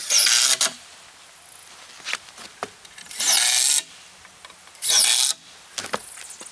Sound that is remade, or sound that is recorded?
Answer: recorded